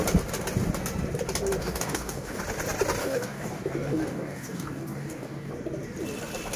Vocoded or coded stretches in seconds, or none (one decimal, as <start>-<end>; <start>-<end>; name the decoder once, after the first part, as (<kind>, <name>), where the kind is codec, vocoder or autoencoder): 1.6-2.4 (codec, DAC); 3.0-5.5